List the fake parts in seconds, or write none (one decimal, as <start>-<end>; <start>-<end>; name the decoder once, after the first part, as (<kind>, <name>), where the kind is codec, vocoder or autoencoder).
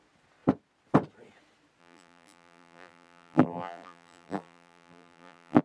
1.8-5.6 (vocoder, BigVGAN v2)